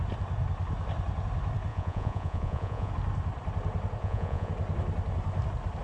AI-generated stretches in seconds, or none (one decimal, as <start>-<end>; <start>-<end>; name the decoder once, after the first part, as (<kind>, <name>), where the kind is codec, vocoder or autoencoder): 1.7-2.9 (vocoder, Vocos); 4.0-4.5